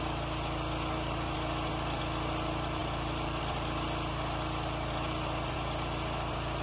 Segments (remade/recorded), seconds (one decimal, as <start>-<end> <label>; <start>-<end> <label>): 0.0-6.6 recorded